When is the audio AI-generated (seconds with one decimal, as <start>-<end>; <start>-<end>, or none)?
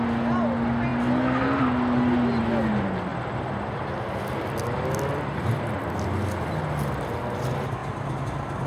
none